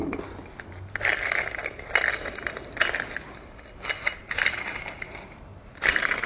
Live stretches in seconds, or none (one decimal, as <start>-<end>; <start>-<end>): 0.4-4.2